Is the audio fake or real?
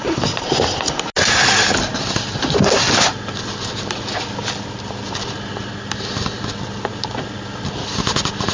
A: real